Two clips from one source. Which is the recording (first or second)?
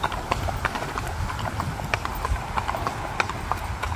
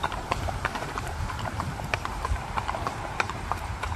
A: first